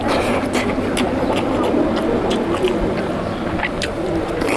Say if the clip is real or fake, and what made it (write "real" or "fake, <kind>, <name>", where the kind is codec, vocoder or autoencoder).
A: real